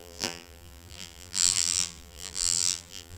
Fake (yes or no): yes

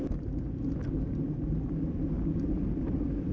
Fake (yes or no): no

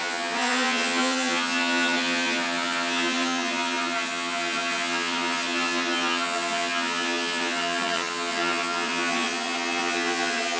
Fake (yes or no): yes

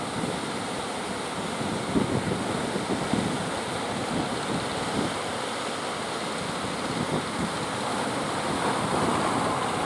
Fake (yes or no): no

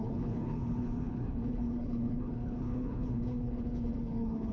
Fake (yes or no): yes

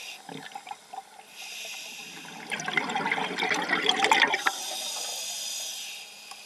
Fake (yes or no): no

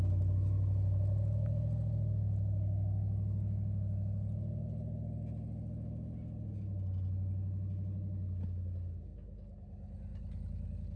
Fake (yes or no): no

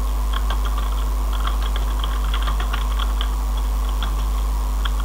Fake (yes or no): no